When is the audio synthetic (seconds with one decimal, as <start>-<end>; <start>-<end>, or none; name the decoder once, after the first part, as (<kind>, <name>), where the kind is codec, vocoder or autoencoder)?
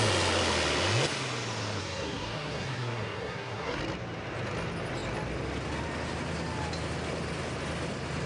1.8-3.8 (codec, SNAC)